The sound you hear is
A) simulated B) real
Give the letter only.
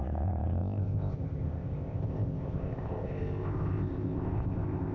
A